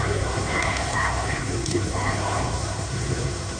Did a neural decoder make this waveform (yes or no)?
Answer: yes